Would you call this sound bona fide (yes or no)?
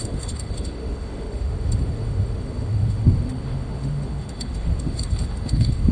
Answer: no